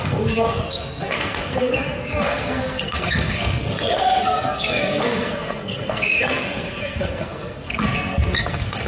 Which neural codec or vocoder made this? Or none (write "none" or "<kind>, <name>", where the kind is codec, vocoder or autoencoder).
codec, SNAC